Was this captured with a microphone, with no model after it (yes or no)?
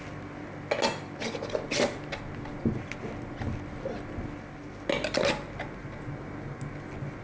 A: yes